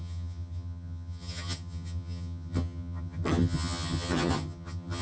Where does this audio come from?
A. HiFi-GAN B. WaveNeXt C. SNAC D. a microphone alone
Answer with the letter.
A